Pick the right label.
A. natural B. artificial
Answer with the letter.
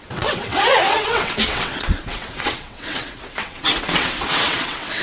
B